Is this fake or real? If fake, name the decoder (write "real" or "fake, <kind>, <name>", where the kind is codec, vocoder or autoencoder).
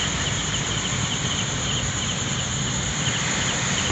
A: real